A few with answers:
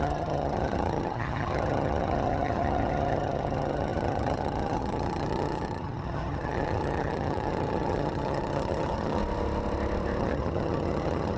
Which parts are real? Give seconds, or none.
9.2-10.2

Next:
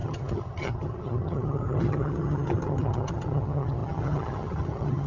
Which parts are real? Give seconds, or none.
none

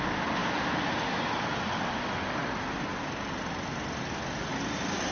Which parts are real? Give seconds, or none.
0.0-5.1

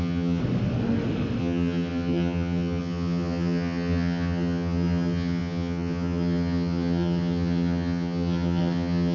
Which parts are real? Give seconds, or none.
0.4-1.4

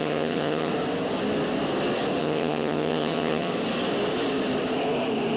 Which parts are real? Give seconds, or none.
0.7-2.2; 3.5-5.4